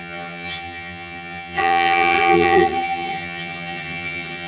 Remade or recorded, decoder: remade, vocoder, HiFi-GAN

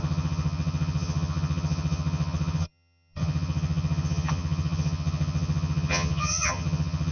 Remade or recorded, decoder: remade, vocoder, HiFi-GAN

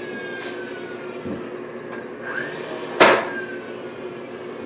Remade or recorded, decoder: recorded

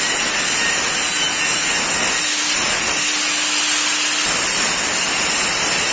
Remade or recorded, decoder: recorded